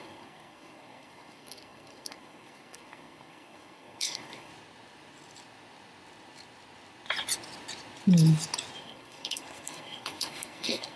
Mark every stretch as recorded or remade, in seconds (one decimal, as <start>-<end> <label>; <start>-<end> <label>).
0.0-4.5 remade; 4.5-8.8 recorded; 8.8-11.0 remade